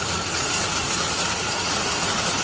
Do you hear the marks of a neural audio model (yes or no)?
yes